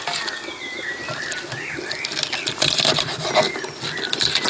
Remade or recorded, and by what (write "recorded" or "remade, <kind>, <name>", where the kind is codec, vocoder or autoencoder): recorded